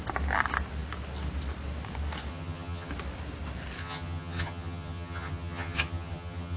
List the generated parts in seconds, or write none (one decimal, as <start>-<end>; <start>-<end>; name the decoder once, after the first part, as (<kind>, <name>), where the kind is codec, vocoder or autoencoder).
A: 2.3-2.9 (vocoder, HiFi-GAN); 3.8-6.6